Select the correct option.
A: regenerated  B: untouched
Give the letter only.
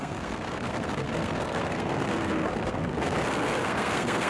A